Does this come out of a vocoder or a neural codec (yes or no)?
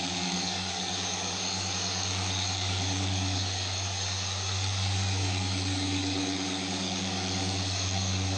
yes